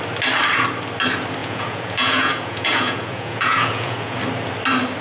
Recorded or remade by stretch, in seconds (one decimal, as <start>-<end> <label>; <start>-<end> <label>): 0.0-1.4 recorded; 1.4-4.2 remade; 4.2-5.0 recorded